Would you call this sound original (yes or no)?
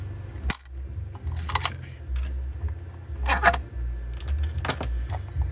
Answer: yes